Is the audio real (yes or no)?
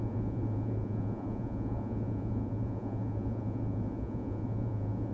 no